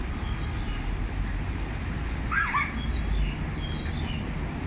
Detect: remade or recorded recorded